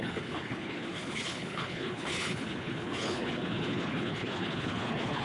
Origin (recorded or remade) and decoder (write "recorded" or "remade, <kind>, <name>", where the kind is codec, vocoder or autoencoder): remade, codec, HILCodec